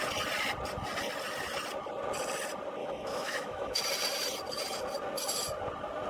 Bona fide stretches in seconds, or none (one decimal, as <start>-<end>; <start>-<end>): 0.0-2.8; 3.8-6.1

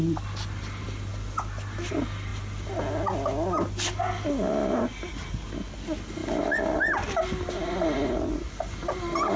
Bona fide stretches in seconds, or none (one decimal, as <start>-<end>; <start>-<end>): 0.0-9.4

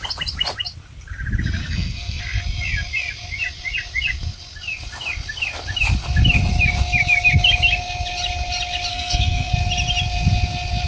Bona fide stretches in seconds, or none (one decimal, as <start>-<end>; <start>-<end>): 0.0-1.6; 2.2-8.9; 9.5-10.9

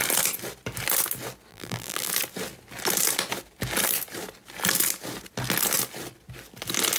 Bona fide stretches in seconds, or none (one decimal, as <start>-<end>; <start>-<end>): 0.0-1.5; 2.1-7.0

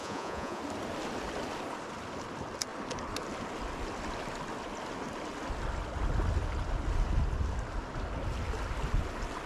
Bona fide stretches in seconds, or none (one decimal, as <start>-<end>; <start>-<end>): 0.6-9.5

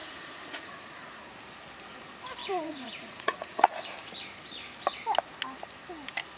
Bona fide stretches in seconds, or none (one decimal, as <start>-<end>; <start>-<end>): 1.3-2.4; 3.8-6.4